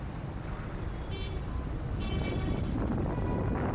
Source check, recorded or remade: recorded